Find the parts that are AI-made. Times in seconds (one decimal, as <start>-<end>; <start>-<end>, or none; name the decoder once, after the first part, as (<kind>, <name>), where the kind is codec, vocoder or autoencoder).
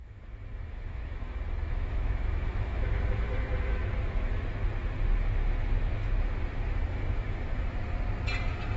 0.0-3.8 (autoencoder, DAC-VAE); 6.7-7.8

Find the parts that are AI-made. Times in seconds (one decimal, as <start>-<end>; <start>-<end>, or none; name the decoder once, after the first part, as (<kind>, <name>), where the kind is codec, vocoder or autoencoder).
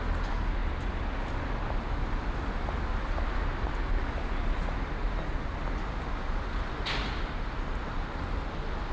none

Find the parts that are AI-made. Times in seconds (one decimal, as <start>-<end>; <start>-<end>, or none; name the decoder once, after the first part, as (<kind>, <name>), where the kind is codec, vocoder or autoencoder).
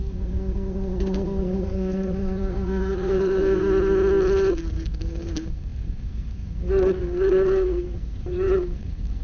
0.0-3.6 (codec, SNAC); 4.5-9.2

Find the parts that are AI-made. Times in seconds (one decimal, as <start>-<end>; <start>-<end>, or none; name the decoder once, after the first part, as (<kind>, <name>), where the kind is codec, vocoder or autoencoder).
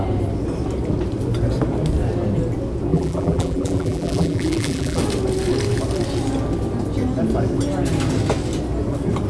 2.9-5.0 (vocoder, BigVGAN v2)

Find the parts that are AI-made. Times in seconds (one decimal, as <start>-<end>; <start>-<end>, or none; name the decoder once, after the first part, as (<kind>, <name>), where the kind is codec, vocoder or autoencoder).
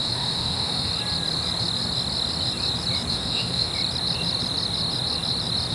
0.0-0.9 (autoencoder, DAC-VAE); 3.1-3.7